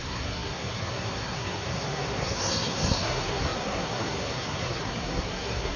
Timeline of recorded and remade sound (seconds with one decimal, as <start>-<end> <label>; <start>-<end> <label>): 0.0-5.8 remade